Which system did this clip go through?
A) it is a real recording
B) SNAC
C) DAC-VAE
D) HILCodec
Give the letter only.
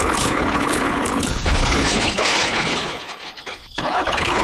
D